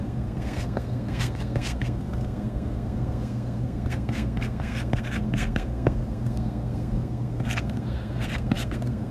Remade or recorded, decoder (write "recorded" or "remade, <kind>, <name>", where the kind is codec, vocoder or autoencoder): remade, codec, SNAC